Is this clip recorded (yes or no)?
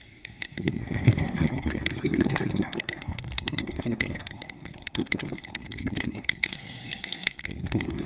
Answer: no